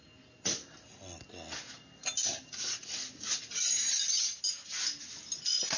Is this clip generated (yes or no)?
no